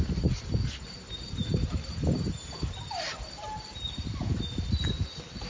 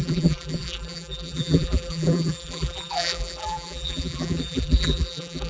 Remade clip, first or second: second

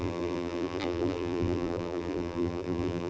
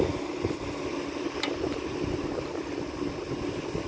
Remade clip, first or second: first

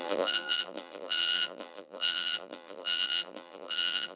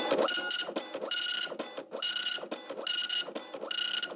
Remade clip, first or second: first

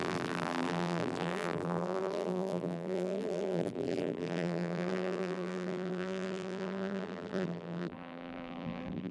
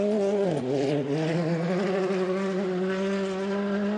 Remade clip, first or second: first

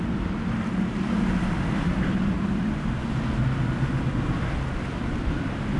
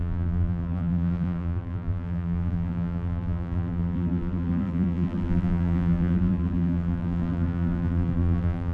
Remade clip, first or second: second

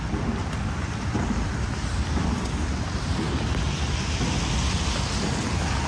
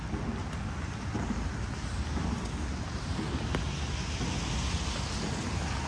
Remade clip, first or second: first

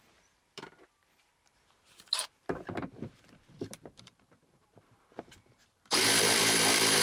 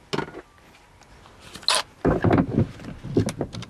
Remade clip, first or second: first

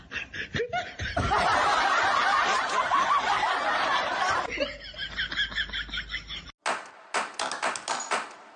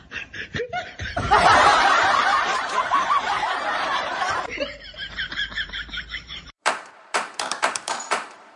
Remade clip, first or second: second